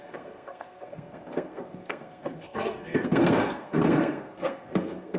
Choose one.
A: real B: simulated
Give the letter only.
B